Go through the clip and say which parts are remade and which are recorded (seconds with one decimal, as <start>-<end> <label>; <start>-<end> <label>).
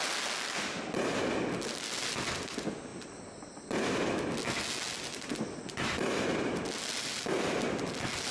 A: 0.0-8.3 recorded